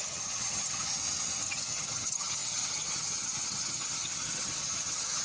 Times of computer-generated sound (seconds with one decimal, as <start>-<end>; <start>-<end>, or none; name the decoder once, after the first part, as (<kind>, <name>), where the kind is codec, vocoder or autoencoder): 0.0-1.0 (vocoder, HiFi-GAN); 1.5-5.2